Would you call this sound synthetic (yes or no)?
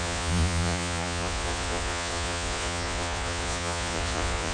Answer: yes